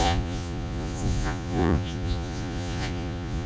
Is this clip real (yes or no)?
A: no